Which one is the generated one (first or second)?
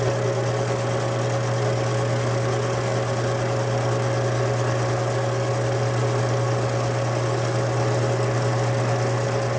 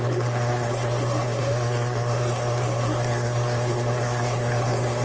second